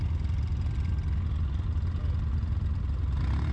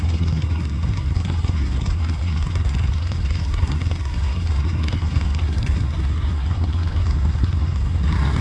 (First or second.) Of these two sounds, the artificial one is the second